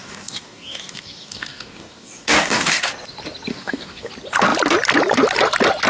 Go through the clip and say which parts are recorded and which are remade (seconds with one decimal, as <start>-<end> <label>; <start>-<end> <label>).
0.0-2.9 remade; 2.9-3.5 recorded; 3.5-4.1 remade; 4.1-5.9 recorded